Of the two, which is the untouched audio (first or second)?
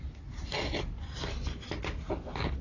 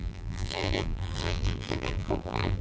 first